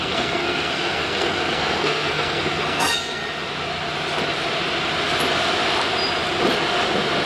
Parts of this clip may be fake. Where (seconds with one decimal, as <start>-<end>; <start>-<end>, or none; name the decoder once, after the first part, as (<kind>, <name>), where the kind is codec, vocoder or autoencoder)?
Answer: 0.0-3.2 (codec, SNAC)